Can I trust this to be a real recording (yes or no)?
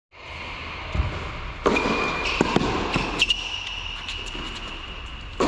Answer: yes